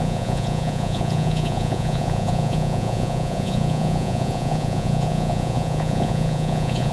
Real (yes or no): no